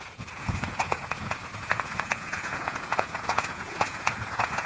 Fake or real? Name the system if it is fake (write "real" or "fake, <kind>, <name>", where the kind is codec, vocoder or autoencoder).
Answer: fake, vocoder, Vocos